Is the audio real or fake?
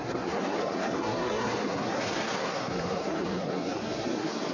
fake